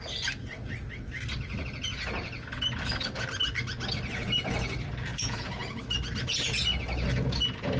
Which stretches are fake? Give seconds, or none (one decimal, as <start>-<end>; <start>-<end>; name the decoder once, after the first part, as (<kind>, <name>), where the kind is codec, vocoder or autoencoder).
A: 5.1-5.8 (vocoder, Vocos)